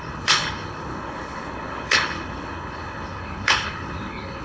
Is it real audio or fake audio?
fake